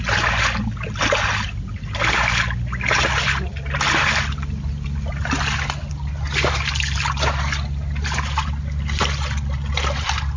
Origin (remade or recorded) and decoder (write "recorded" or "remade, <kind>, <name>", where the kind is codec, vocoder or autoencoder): recorded